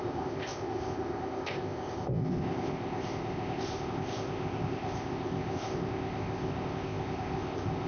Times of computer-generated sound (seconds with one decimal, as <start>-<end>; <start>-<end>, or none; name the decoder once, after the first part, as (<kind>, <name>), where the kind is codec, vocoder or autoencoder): 0.0-7.9 (codec, ZipCodec)

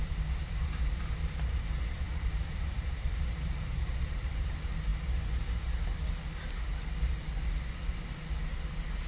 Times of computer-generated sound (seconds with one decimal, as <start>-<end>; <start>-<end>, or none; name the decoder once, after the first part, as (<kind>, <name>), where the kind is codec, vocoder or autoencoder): 0.0-4.5 (vocoder, BigVGAN v2)

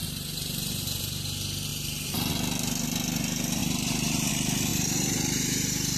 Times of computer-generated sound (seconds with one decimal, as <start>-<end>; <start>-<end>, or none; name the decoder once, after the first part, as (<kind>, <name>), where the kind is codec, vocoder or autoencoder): 0.0-1.0 (vocoder, BigVGAN v2); 1.7-2.3; 3.6-4.3; 4.7-6.0

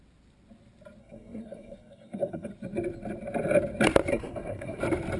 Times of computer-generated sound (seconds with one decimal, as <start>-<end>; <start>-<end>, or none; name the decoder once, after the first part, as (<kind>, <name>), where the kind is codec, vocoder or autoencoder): 1.0-2.5 (codec, SNAC); 4.1-4.8

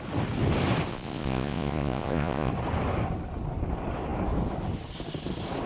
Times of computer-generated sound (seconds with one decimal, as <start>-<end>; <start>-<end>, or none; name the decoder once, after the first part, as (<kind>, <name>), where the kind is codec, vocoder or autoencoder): 0.9-2.5 (vocoder, Vocos)

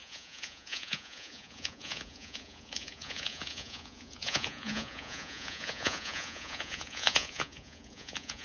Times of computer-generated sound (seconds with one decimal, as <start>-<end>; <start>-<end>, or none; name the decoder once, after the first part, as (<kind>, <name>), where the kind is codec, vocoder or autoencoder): 0.0-8.4 (vocoder, Vocos)